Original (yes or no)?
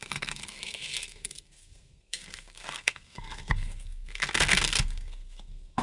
no